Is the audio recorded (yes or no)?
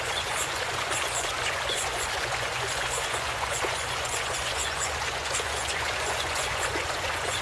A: no